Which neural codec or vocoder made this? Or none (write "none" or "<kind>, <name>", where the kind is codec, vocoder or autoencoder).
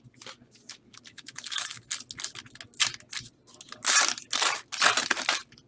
none